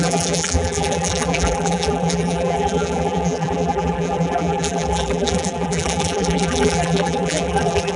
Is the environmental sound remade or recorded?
remade